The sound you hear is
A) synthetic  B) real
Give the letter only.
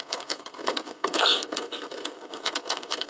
A